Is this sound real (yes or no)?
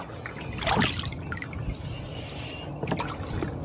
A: yes